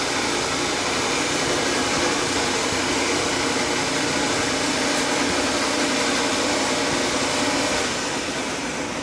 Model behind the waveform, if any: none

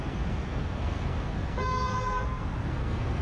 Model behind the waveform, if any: codec, SNAC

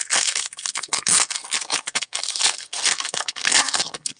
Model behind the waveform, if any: codec, SNAC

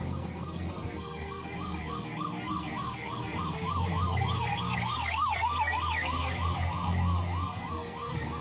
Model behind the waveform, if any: codec, SNAC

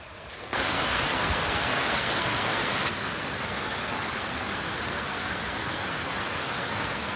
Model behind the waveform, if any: codec, SNAC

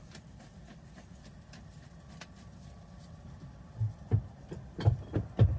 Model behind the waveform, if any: none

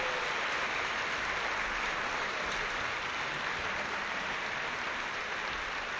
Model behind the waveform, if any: none